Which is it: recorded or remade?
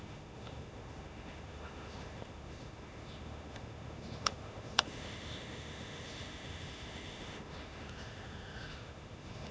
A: remade